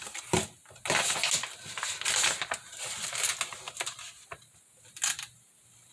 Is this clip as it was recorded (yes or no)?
yes